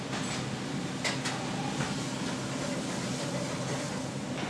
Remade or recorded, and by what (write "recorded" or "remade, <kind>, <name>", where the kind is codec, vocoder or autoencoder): recorded